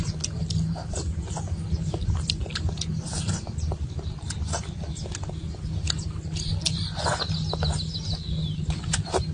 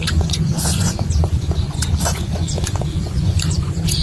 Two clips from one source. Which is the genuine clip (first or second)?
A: first